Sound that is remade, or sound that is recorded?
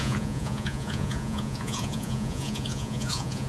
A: remade